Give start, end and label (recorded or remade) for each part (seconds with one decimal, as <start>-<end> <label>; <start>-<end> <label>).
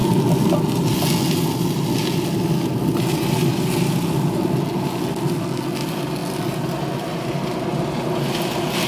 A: 0.0-8.9 recorded